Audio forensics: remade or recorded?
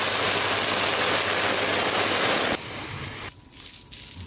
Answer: recorded